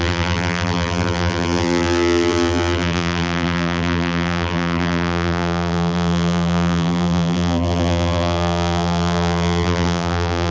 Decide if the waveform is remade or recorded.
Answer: remade